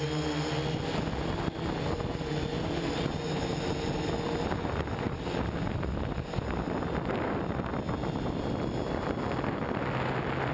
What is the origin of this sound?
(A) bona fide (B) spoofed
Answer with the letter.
A